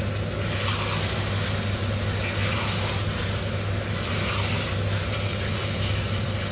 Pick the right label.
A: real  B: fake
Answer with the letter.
A